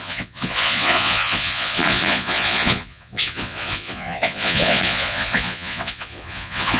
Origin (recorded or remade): remade